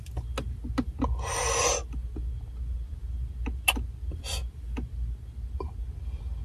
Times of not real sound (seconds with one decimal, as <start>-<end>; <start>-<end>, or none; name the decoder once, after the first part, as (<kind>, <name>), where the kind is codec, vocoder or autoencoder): none